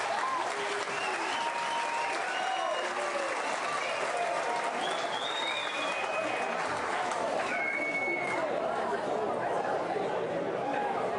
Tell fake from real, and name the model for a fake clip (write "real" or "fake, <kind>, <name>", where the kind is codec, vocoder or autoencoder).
real